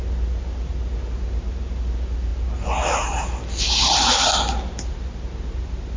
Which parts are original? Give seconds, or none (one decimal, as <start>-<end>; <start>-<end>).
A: 0.0-6.0